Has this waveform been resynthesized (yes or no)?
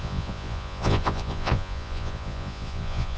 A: yes